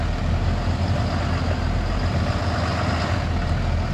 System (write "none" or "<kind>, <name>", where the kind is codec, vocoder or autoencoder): none